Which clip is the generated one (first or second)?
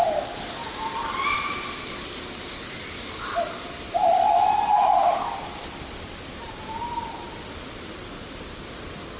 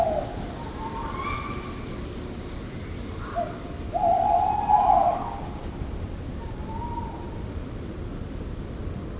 first